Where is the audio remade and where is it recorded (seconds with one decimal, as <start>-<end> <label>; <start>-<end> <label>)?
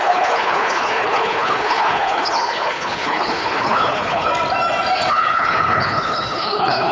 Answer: 0.0-4.3 remade; 4.3-5.1 recorded; 5.1-6.9 remade